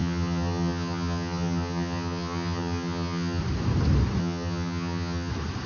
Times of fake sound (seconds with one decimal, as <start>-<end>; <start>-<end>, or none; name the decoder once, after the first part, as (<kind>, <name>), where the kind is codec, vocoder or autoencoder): 0.0-3.4 (vocoder, HiFi-GAN); 4.2-5.3